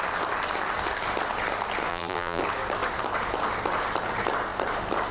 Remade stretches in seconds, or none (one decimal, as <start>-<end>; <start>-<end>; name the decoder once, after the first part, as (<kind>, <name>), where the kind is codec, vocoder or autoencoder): 1.9-2.4 (vocoder, BigVGAN v2)